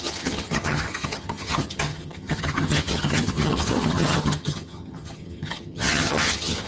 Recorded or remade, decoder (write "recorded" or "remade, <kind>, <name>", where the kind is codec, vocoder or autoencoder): remade, vocoder, HiFi-GAN